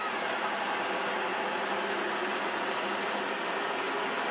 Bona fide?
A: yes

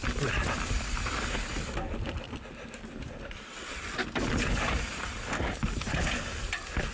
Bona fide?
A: yes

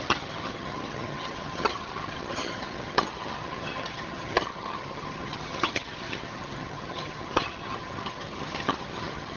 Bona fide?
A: no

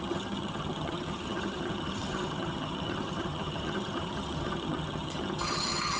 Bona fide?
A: no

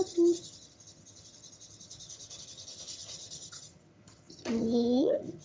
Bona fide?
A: no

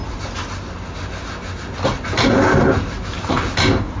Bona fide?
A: yes